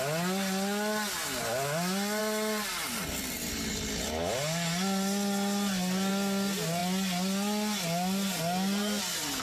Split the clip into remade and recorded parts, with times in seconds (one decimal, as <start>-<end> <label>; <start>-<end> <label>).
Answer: 0.0-9.4 recorded